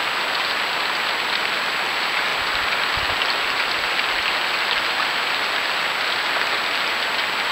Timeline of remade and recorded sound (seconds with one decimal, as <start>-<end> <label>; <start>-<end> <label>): 0.0-7.5 recorded